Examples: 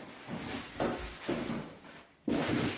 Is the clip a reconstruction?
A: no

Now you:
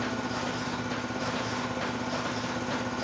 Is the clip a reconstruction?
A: no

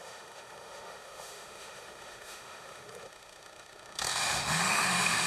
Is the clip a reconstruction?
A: yes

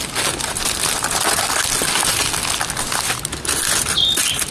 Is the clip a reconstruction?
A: no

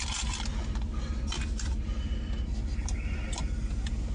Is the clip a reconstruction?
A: no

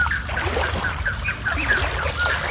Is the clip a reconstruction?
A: no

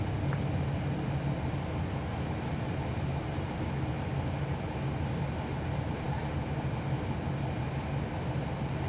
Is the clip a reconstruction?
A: no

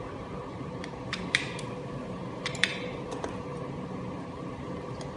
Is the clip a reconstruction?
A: yes